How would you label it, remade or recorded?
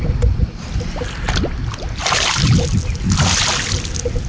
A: recorded